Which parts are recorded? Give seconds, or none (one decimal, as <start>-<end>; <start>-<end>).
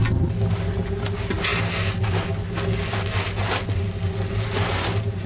0.0-5.3